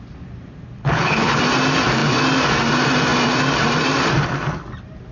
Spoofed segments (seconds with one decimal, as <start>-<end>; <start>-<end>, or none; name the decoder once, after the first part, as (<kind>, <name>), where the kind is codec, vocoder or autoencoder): 0.8-1.4 (codec, HILCodec)